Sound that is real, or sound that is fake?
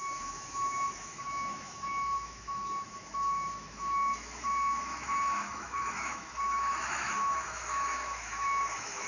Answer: fake